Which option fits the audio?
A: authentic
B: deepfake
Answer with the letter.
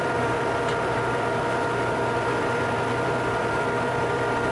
B